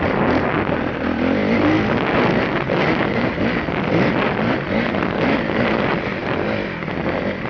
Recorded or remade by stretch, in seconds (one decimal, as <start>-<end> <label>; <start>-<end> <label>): 0.0-7.5 recorded